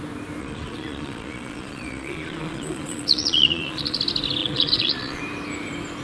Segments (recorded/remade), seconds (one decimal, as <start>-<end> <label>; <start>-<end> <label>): 0.0-0.4 recorded; 0.4-4.0 remade; 4.0-4.4 recorded; 4.4-5.2 remade; 5.2-6.0 recorded